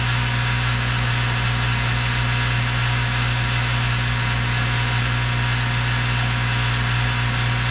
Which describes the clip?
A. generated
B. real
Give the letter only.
B